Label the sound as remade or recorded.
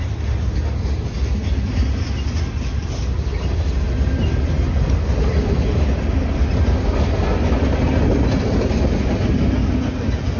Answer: recorded